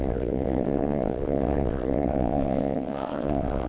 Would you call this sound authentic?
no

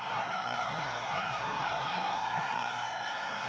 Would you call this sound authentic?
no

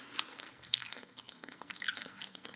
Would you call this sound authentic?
no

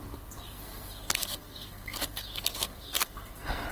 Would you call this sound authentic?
no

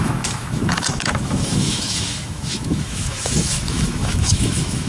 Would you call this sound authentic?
no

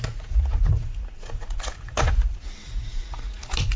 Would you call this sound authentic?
no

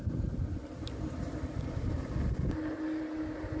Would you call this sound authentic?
yes